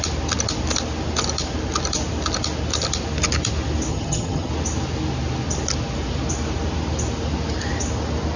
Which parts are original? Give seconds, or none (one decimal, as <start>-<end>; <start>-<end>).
0.0-3.9; 4.5-8.4